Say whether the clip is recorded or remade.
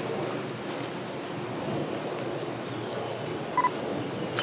recorded